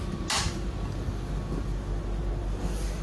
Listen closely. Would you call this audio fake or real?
real